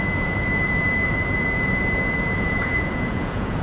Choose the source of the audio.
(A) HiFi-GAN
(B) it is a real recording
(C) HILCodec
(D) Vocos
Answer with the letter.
D